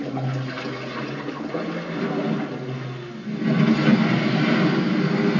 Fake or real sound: real